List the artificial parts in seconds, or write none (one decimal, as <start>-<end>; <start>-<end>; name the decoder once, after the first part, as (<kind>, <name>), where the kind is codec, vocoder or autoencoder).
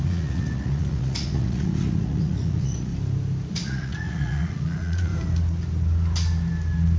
0.0-2.9 (vocoder, Vocos); 3.5-5.1